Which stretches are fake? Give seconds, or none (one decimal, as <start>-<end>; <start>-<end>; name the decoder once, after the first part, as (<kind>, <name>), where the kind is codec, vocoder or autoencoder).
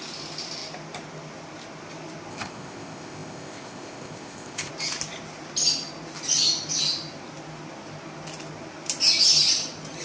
2.3-4.7 (codec, ZipCodec)